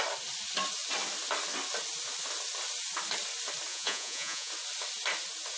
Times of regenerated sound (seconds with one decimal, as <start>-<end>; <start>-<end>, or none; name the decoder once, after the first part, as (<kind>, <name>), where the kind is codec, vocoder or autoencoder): 3.7-4.5 (vocoder, Vocos)